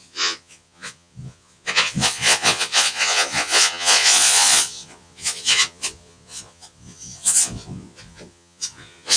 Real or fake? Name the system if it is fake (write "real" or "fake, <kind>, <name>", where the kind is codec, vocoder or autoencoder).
fake, vocoder, Vocos